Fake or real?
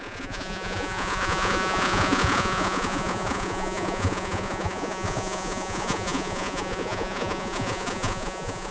fake